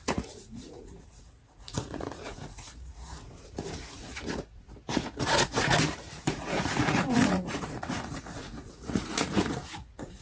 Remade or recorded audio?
remade